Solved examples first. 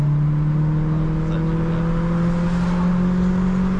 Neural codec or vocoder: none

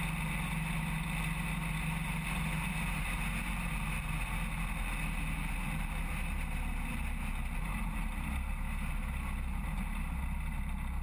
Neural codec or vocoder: none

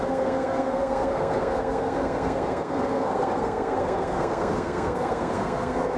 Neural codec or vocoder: codec, SNAC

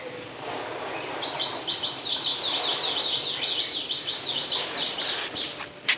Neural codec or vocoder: none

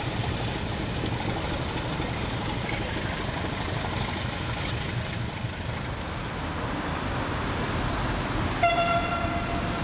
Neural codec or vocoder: none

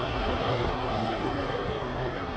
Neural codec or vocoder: codec, SNAC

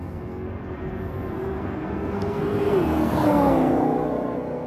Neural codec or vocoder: codec, SNAC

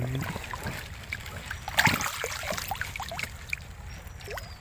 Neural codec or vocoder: none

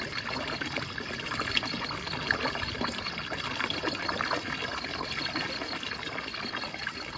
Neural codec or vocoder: none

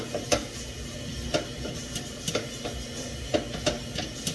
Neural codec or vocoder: none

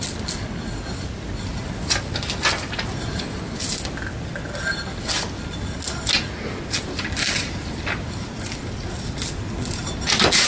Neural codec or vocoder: none